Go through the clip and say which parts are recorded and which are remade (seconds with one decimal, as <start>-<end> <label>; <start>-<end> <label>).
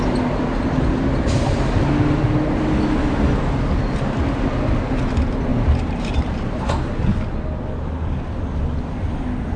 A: 0.0-5.5 recorded; 5.5-6.8 remade; 6.8-9.6 recorded